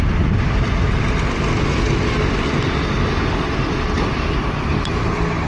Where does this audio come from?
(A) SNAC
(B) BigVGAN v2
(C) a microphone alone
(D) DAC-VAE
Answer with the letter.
C